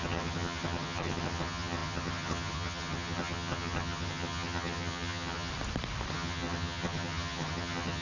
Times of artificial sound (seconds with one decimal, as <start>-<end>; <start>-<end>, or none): 0.0-5.5; 6.1-8.0